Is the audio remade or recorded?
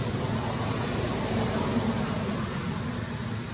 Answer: recorded